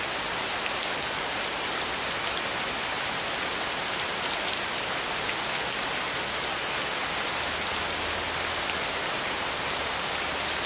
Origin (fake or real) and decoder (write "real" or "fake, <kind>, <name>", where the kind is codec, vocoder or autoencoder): real